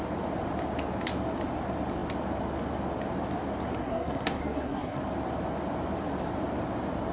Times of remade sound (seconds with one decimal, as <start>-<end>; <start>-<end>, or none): 3.8-5.0